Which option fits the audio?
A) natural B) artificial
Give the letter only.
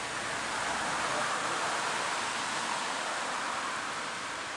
B